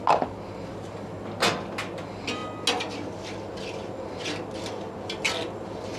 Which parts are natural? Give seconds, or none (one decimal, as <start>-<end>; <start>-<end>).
0.0-6.0